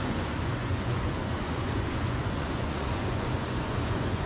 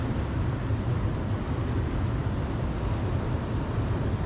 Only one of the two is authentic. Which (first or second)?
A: second